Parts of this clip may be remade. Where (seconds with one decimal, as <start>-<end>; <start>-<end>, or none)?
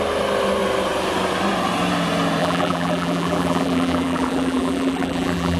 2.4-5.6